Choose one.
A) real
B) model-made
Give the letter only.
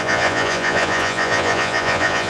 B